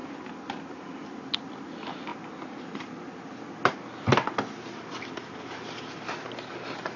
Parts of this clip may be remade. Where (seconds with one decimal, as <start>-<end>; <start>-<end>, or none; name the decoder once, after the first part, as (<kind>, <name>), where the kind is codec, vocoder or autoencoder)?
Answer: none